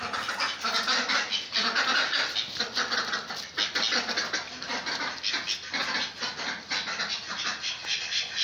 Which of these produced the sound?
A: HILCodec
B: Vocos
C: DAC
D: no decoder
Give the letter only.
D